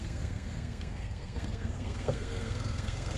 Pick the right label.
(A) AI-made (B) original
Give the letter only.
A